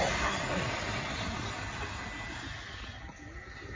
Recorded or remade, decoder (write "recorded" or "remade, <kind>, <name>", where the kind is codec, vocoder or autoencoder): recorded